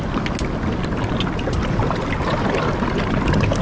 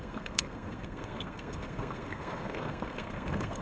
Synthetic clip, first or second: second